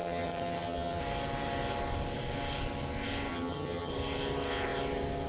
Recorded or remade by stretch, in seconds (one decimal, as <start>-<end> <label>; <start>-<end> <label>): 0.0-1.0 remade; 1.0-3.3 recorded; 3.3-3.9 remade; 3.9-5.3 recorded